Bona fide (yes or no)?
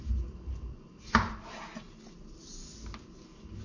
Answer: yes